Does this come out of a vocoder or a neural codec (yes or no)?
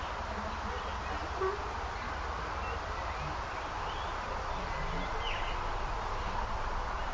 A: no